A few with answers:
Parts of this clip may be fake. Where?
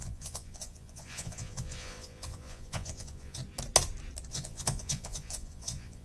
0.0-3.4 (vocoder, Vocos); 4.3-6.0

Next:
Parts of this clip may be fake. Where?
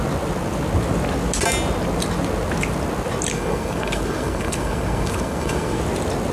3.3-5.8 (codec, SNAC)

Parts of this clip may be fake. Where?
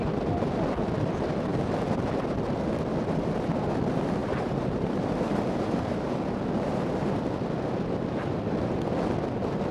4.2-6.0 (vocoder, BigVGAN v2)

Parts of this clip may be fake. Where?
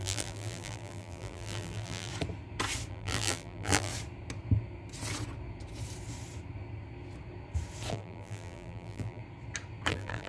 0.0-2.1 (vocoder, BigVGAN v2); 2.9-3.9; 7.9-9.2; 9.9-10.3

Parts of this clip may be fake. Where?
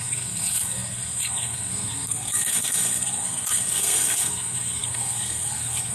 0.0-5.9 (codec, SNAC)